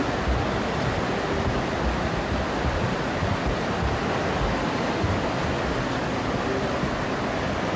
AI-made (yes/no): no